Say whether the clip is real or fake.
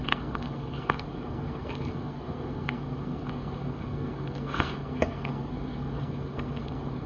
fake